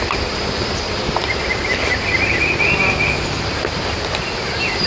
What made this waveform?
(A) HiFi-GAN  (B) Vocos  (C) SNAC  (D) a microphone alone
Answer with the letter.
D